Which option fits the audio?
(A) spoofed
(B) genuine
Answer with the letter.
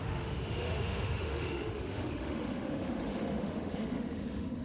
A